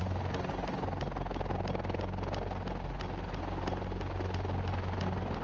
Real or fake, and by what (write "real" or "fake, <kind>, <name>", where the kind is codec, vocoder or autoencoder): real